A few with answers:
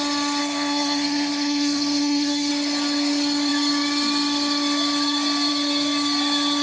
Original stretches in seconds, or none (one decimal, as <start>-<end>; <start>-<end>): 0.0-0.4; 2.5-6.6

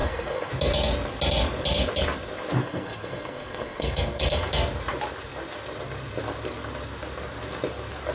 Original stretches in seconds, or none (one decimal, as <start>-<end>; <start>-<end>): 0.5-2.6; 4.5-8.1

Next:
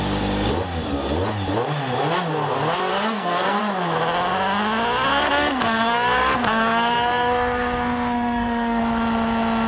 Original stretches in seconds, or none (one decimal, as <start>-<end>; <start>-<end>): 0.0-2.9; 3.6-5.1; 8.8-9.7